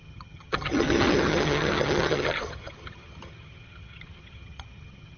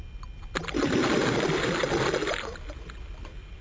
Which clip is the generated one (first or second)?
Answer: first